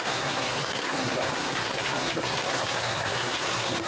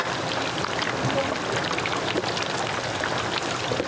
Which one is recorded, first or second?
second